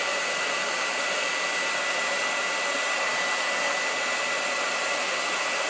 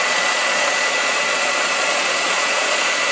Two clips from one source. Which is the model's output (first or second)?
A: second